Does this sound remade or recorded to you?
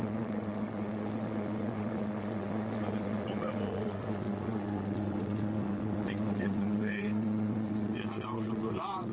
remade